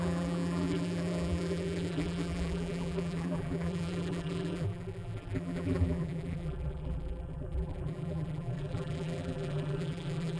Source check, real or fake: fake